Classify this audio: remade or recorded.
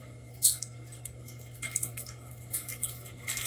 remade